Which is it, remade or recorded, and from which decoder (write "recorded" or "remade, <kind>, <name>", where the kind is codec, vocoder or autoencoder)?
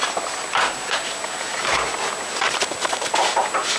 recorded